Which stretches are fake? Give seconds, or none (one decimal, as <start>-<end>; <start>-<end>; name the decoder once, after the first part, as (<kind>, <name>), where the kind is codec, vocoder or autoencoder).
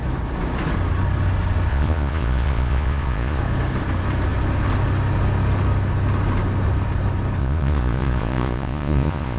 1.7-3.4 (vocoder, Vocos); 7.4-9.4